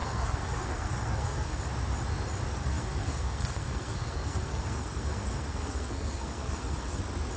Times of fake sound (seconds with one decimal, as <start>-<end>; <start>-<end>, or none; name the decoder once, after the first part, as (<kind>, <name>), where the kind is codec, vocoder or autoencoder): 0.0-1.6 (codec, SNAC); 2.6-7.0